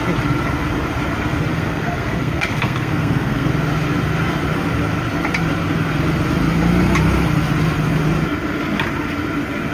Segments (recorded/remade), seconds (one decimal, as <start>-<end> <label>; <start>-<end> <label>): 0.0-1.5 recorded; 1.5-3.5 remade; 3.5-9.7 recorded